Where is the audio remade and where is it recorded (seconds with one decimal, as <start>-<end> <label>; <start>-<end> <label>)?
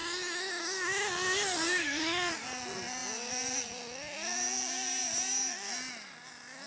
0.0-1.8 recorded; 1.8-2.3 remade; 2.3-6.7 recorded